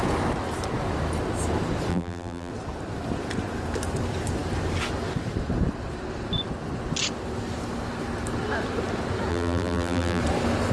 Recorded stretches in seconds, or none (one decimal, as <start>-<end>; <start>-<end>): 0.0-1.9; 2.5-9.3; 10.2-10.7

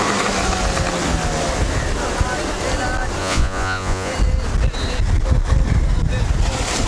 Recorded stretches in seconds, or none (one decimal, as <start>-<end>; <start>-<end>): 0.0-3.2; 4.1-6.9

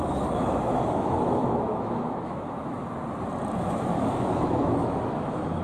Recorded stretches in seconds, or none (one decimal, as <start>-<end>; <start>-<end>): 2.8-3.6

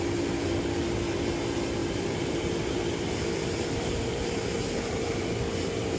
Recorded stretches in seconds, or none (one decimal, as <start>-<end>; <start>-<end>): 0.0-1.8; 5.3-6.0